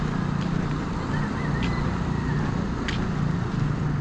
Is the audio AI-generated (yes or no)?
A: no